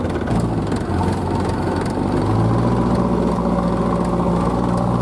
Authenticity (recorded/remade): recorded